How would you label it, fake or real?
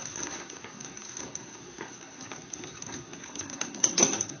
fake